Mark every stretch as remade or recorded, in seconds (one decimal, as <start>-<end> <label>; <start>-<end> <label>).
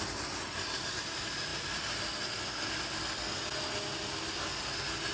0.0-5.1 recorded